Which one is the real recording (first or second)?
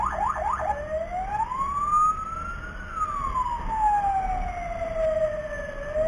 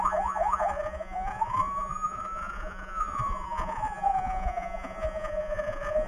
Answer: first